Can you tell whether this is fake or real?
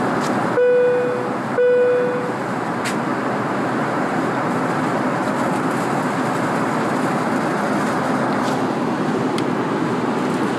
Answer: real